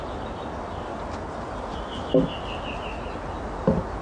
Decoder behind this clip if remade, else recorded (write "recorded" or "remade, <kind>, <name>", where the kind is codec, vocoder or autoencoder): recorded